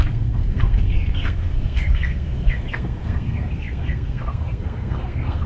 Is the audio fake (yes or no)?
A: yes